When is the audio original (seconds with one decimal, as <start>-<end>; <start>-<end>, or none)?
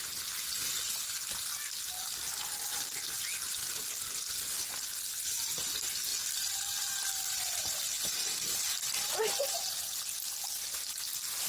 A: 0.0-11.5